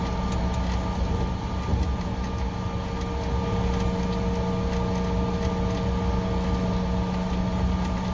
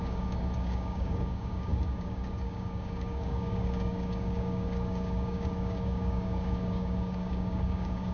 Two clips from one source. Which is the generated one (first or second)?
second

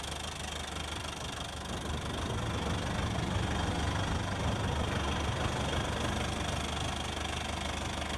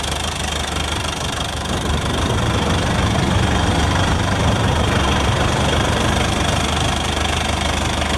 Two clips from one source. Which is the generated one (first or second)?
second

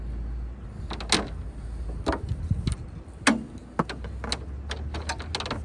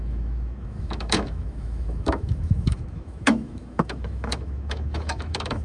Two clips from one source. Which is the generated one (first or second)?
second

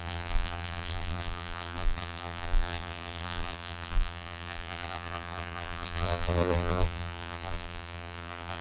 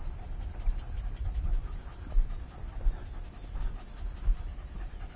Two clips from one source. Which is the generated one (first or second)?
first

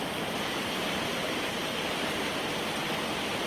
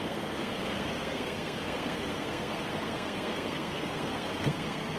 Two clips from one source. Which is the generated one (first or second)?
second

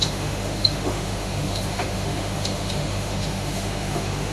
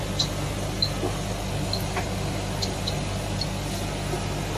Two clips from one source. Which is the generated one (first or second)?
first